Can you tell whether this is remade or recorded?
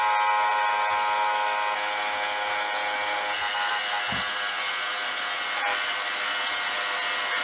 recorded